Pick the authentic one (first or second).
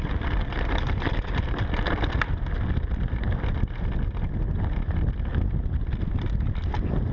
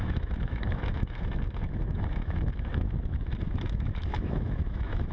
first